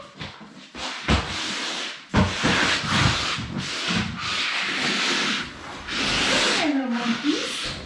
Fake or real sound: real